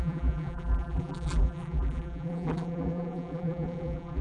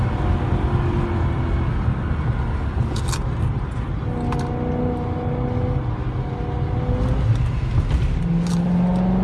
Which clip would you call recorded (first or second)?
second